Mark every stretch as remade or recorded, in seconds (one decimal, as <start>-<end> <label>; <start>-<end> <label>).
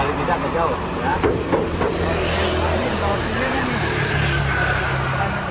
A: 0.0-1.1 recorded; 1.1-1.9 remade; 1.9-2.8 recorded; 2.8-4.4 remade; 4.4-5.5 recorded